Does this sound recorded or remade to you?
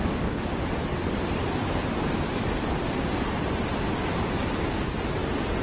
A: recorded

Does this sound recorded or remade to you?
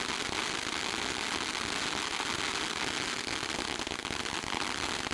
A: recorded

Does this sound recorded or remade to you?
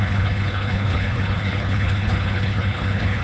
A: remade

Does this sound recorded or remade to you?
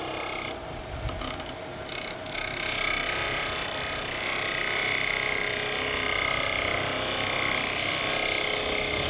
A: recorded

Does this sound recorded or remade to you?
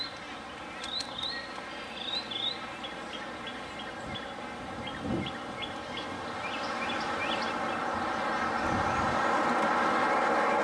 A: recorded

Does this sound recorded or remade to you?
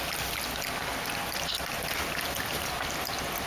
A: recorded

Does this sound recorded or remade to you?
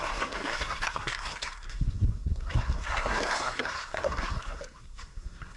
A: remade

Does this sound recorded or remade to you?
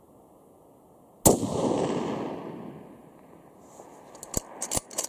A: recorded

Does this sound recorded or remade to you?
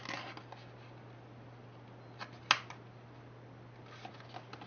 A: recorded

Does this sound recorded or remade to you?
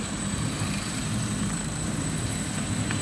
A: remade